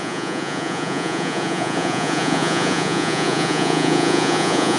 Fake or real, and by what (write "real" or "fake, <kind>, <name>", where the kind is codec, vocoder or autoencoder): fake, vocoder, Vocos